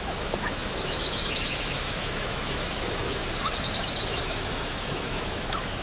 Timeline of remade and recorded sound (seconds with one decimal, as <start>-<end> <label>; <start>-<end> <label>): 0.0-3.2 remade; 3.2-4.0 recorded; 4.0-5.8 remade